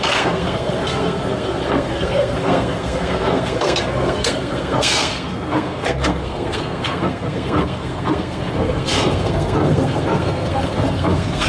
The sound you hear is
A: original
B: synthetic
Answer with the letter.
B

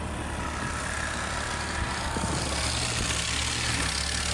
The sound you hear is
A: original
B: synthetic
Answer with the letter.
A